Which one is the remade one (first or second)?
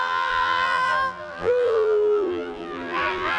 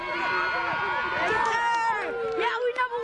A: first